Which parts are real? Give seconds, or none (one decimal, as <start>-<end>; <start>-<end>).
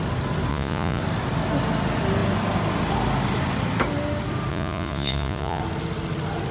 0.0-0.5; 1.0-4.5; 5.6-6.5